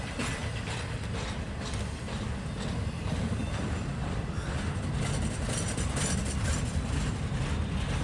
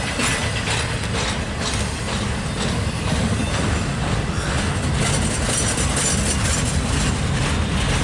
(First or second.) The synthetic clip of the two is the first